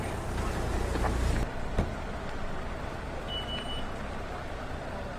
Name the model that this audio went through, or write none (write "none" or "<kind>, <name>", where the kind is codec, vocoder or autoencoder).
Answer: none